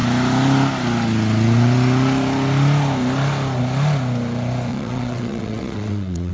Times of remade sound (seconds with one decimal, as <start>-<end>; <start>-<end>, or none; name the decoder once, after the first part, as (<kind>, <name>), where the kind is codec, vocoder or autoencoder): 4.7-6.3 (vocoder, WaveNeXt)